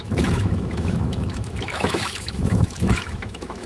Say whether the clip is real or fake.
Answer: fake